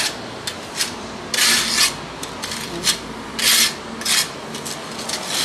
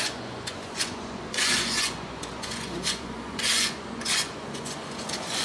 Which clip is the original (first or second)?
first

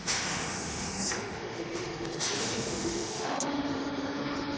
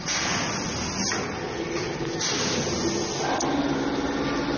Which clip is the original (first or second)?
second